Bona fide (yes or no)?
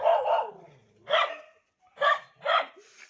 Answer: yes